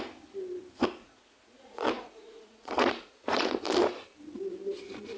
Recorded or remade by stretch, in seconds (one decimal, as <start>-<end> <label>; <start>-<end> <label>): 0.0-1.0 recorded; 1.0-3.6 remade; 3.6-5.2 recorded